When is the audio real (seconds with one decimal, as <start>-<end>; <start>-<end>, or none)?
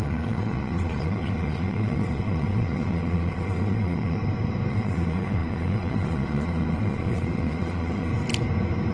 4.2-4.7; 8.1-8.9